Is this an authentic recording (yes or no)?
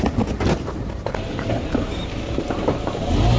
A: yes